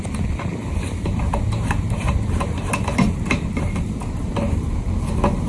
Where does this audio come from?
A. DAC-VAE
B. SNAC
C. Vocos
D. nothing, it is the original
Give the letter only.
D